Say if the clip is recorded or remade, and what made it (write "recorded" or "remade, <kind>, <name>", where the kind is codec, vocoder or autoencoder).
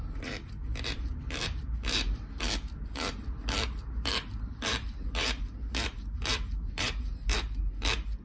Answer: remade, vocoder, BigVGAN v2